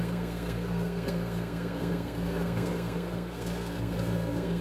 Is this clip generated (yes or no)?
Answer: yes